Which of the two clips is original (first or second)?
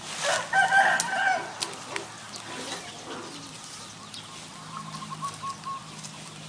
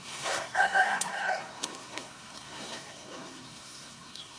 first